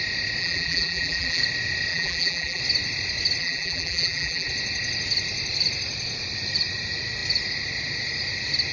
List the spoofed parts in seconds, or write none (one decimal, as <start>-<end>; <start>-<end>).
0.4-1.4; 1.9-2.6; 3.4-4.5

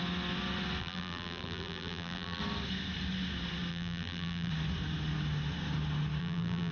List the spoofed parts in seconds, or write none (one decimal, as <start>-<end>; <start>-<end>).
0.8-2.4; 3.7-4.5; 6.2-6.7